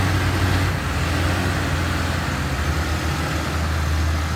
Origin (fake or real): real